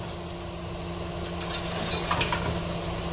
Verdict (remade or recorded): recorded